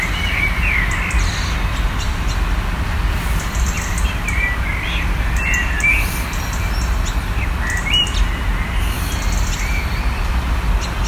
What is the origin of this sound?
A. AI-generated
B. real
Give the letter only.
B